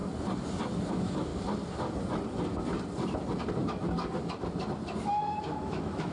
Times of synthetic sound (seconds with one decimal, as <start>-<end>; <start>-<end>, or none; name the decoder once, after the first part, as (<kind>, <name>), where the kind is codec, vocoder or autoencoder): 0.9-1.3 (autoencoder, DAC-VAE); 5.0-6.1